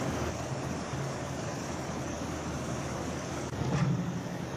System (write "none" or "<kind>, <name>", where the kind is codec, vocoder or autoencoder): codec, DAC